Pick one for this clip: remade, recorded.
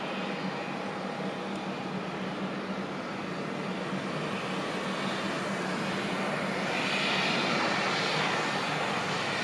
recorded